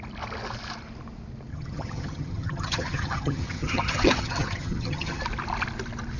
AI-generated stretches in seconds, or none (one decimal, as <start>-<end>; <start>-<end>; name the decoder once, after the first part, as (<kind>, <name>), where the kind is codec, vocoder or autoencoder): 1.5-5.2 (vocoder, HiFi-GAN)